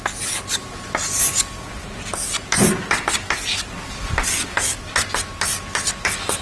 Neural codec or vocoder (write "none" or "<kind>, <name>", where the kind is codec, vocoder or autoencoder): none